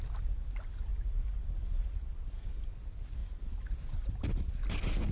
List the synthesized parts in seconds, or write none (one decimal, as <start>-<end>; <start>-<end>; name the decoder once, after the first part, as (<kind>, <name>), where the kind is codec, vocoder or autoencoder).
none